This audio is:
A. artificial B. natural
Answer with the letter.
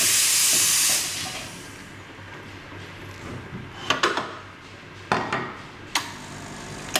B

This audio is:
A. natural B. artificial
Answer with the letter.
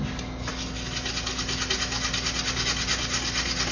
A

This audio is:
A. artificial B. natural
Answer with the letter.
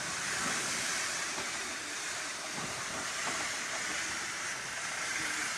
A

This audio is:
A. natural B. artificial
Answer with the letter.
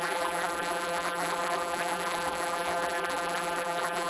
B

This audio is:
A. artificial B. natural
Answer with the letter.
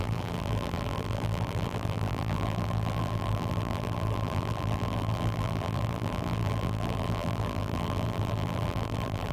A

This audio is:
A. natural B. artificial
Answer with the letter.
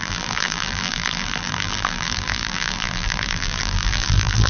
B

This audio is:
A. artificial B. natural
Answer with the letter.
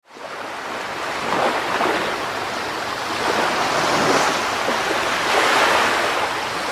B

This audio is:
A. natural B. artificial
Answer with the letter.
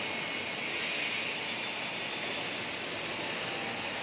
A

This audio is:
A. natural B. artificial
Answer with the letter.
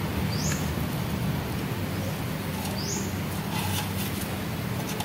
A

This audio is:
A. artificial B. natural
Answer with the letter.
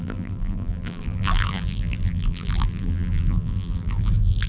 A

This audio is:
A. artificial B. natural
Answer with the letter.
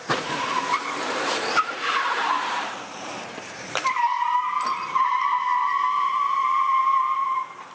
A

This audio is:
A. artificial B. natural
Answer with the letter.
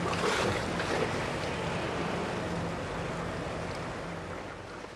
B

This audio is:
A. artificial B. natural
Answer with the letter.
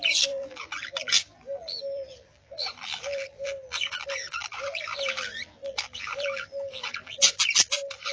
A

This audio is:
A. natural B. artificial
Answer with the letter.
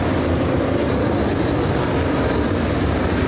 B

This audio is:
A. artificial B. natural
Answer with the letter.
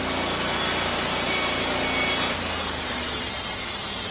B